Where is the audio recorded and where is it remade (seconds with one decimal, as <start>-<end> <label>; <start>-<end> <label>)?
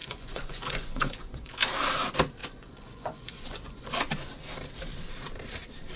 0.0-1.5 remade; 1.5-2.4 recorded; 2.4-4.0 remade; 4.0-6.0 recorded